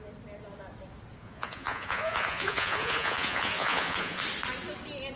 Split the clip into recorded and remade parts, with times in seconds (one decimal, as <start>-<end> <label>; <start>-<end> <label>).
0.0-1.2 recorded; 1.2-4.2 remade; 4.2-5.2 recorded